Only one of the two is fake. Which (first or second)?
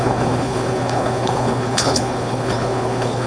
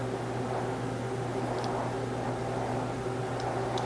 first